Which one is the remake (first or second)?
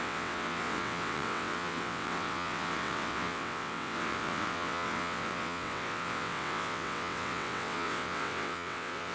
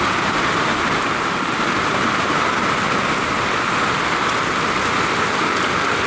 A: first